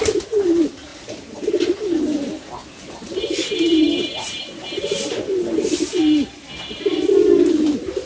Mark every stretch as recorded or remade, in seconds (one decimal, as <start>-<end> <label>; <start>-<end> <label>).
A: 0.0-0.9 recorded; 0.9-1.9 remade; 1.9-2.6 recorded; 2.6-4.4 remade; 4.4-8.1 recorded